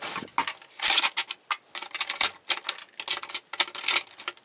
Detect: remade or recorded recorded